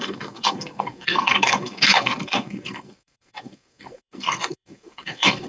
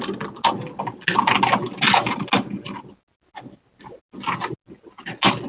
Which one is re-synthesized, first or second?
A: first